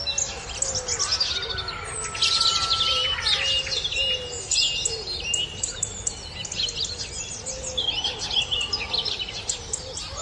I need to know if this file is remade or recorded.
recorded